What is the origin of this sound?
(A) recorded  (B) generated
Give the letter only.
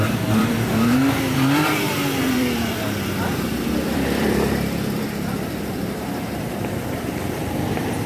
B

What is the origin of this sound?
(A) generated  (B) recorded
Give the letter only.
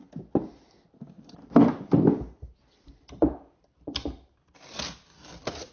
A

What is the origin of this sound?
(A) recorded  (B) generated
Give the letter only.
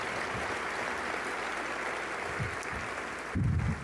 A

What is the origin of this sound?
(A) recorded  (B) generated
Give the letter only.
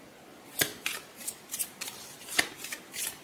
B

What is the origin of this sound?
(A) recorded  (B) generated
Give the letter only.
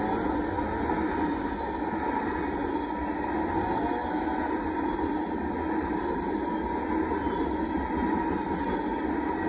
A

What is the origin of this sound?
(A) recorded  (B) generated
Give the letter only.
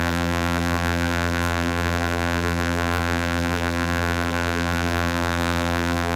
B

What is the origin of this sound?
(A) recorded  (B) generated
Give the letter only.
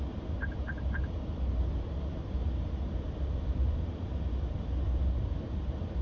B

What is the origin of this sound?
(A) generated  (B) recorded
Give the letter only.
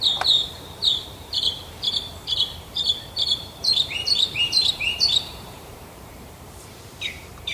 A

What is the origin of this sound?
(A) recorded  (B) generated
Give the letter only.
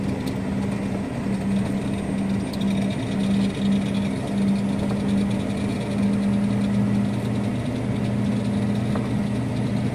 A